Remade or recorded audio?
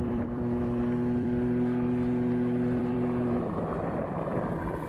remade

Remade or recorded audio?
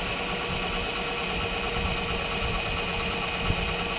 recorded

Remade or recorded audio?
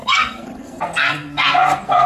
remade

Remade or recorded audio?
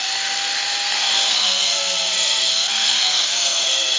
remade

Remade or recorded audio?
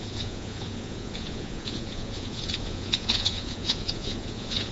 remade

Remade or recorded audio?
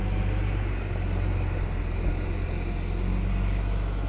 recorded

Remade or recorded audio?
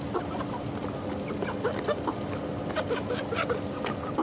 remade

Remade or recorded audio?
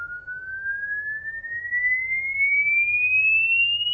recorded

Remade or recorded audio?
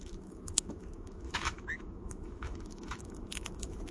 remade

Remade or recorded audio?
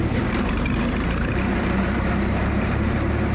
remade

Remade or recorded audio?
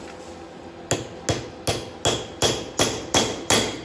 recorded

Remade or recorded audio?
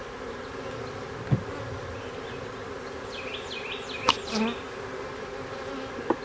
recorded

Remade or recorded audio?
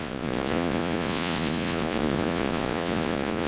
remade